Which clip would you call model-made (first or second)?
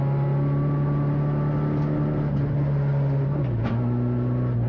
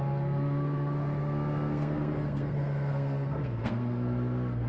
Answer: second